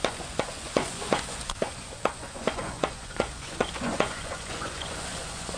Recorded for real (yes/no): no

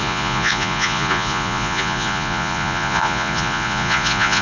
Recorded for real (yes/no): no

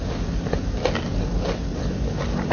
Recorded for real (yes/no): yes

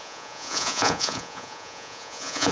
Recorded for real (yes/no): no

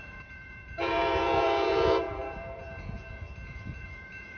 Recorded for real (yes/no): no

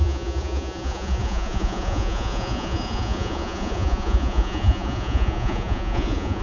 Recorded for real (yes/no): no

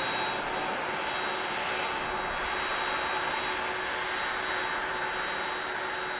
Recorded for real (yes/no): yes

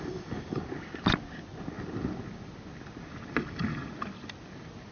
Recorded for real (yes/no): yes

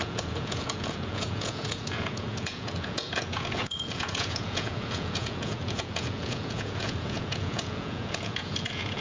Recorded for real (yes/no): no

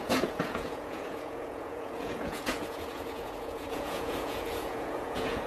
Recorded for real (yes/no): no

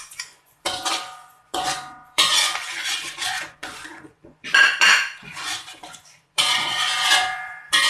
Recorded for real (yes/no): no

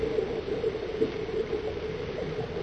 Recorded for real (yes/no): yes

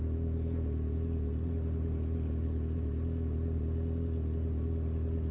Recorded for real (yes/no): yes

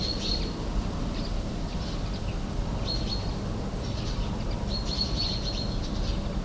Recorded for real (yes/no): yes